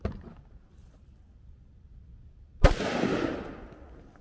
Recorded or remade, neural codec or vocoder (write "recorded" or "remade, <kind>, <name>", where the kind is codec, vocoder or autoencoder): recorded